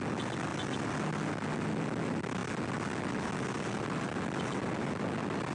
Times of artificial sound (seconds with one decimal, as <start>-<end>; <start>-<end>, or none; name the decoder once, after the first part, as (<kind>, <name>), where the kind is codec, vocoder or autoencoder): none